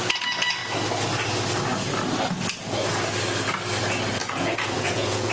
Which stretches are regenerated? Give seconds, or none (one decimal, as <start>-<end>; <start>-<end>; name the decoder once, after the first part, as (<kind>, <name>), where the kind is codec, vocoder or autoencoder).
4.2-5.3 (vocoder, Vocos)